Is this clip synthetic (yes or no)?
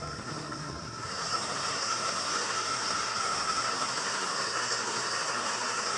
yes